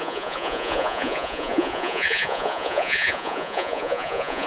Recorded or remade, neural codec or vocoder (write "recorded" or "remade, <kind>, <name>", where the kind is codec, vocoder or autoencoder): remade, vocoder, Vocos